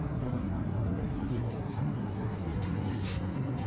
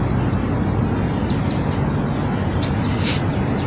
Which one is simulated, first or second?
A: first